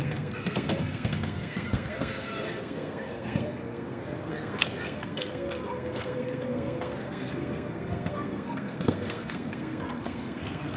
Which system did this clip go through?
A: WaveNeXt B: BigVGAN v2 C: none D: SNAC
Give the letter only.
D